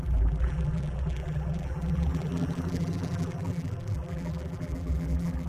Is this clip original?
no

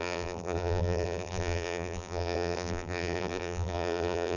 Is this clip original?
no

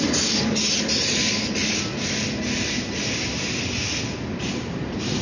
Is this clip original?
yes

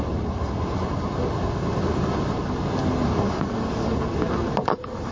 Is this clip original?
yes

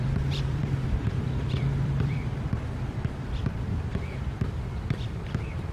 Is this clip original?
no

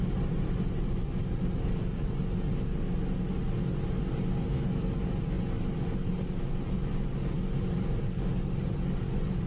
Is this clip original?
yes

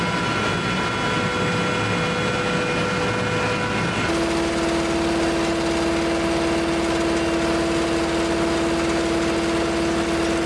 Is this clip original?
yes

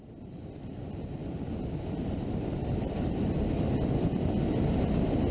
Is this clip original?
yes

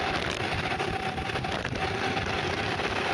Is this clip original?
no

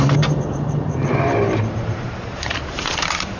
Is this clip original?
no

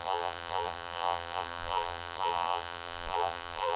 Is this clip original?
no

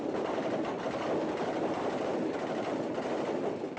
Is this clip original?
yes